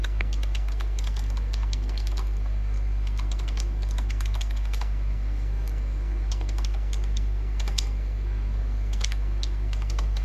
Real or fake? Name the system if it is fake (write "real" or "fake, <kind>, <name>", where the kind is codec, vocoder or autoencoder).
fake, codec, SNAC